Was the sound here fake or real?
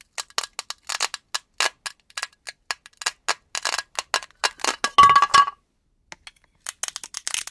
real